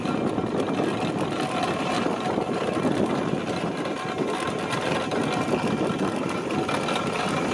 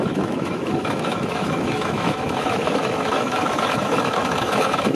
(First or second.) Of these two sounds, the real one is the first